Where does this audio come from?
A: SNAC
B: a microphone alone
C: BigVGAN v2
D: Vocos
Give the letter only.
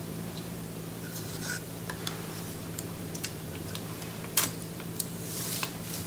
C